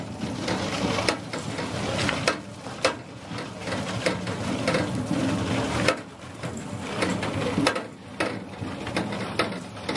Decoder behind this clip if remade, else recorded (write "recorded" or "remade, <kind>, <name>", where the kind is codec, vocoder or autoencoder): recorded